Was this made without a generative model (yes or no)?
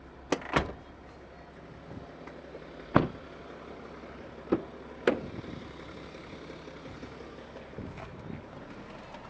yes